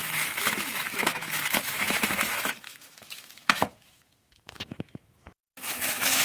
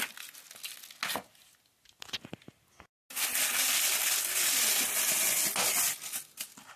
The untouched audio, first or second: second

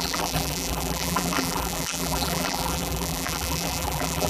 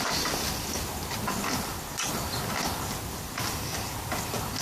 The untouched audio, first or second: second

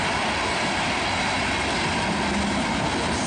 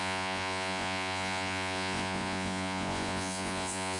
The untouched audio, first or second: first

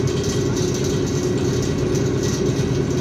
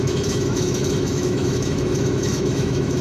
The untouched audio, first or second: first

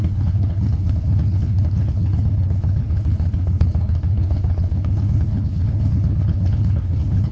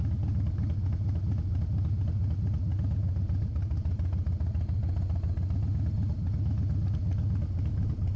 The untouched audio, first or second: second